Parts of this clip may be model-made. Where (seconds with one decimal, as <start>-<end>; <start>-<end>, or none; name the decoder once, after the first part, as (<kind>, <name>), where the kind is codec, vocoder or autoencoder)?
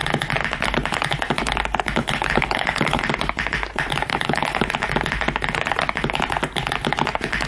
2.0-3.0 (codec, HILCodec); 4.1-4.7